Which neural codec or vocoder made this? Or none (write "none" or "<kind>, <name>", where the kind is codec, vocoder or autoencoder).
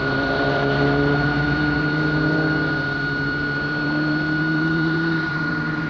vocoder, BigVGAN v2